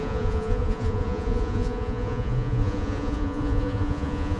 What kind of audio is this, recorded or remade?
remade